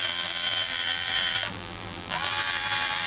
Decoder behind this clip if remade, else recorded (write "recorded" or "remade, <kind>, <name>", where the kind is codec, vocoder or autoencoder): remade, vocoder, BigVGAN v2